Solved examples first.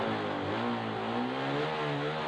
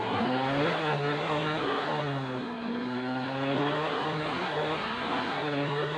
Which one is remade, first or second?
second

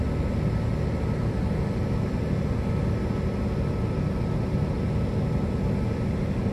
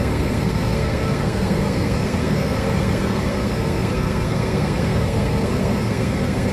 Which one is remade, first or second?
second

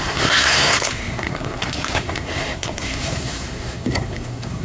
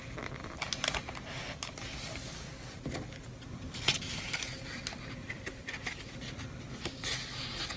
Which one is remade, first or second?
first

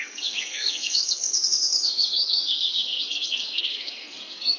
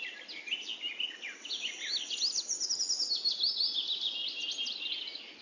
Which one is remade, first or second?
first